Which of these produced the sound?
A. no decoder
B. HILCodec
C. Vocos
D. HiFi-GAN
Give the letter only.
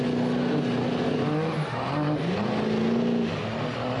A